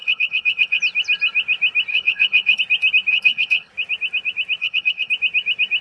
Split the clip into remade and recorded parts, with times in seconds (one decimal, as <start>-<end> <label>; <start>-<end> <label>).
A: 0.0-0.8 remade; 0.8-1.9 recorded; 1.9-2.6 remade; 2.6-3.1 recorded; 3.1-3.7 remade; 3.7-4.6 recorded; 4.6-5.1 remade; 5.1-5.8 recorded